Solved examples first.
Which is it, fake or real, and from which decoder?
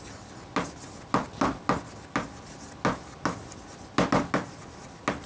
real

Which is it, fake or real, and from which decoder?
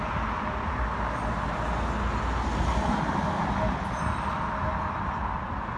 real